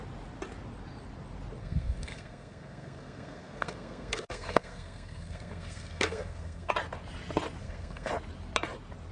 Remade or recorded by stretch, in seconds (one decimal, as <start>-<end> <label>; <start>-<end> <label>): 0.0-1.6 recorded; 1.6-6.7 remade; 6.7-7.6 recorded; 7.6-8.1 remade; 8.1-9.1 recorded